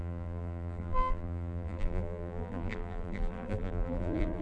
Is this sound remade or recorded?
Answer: remade